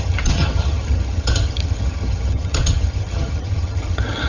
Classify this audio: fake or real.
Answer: fake